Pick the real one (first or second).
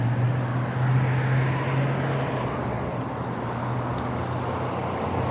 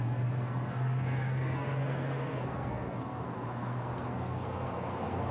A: first